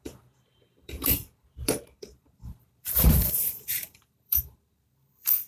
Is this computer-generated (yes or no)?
yes